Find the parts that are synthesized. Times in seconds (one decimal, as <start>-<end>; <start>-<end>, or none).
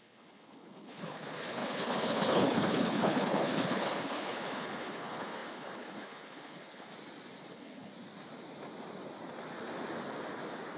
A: 0.0-6.9; 7.5-7.9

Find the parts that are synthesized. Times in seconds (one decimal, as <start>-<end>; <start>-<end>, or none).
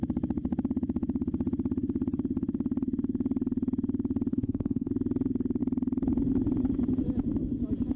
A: 4.3-4.9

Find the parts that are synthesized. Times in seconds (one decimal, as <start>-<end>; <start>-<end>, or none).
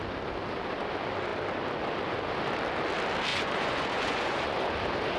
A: 3.3-4.7